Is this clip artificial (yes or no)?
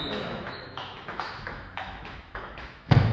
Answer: yes